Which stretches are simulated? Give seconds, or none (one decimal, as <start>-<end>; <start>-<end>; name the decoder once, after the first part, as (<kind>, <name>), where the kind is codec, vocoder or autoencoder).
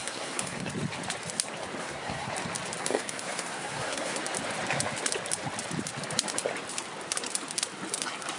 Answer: 0.0-0.7 (codec, SNAC); 1.8-2.3; 2.8-4.2